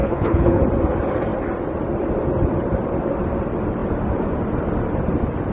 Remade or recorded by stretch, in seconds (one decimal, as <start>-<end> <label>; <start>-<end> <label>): 0.0-0.6 remade; 0.6-5.5 recorded